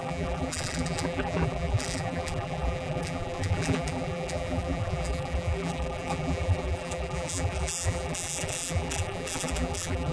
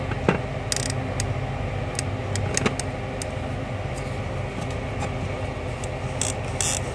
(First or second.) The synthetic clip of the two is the first